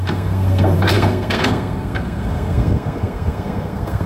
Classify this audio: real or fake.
fake